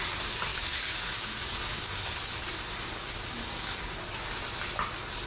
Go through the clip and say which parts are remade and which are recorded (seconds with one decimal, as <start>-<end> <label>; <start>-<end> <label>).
0.0-0.5 recorded; 0.5-2.3 remade; 2.3-3.0 recorded; 3.0-3.8 remade; 3.8-5.3 recorded